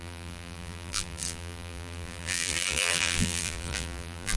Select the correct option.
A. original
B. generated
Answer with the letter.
B